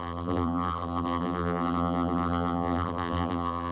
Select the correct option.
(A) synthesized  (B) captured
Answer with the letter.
A